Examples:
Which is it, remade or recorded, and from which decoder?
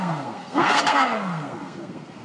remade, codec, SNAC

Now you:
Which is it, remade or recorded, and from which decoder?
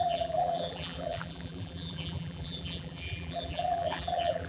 remade, vocoder, BigVGAN v2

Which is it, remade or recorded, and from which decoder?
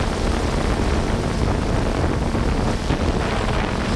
recorded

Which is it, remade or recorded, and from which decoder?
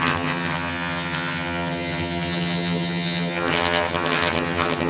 remade, vocoder, HiFi-GAN